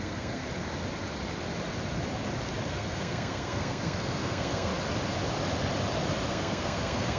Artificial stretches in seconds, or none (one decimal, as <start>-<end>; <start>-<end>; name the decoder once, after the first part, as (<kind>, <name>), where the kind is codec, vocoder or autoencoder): 0.0-0.4 (codec, SNAC); 2.7-4.7; 6.3-7.2